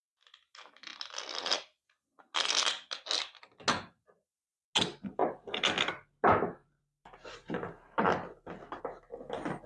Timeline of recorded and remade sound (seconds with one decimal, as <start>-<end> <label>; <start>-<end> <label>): 0.0-5.2 recorded; 5.2-5.7 remade; 5.7-6.6 recorded; 6.6-8.8 remade; 8.8-9.7 recorded